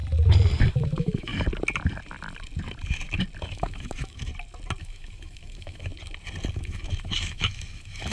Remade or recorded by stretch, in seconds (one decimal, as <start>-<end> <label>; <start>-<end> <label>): 0.0-0.7 recorded; 0.7-1.3 remade; 1.3-3.4 recorded; 3.4-4.3 remade; 4.3-4.8 recorded; 4.8-5.9 remade; 5.9-6.5 recorded; 6.5-8.1 remade